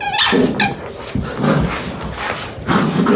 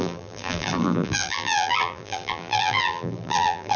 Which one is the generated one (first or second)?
second